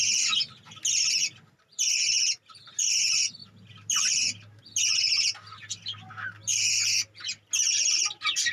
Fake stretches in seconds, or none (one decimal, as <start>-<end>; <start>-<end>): none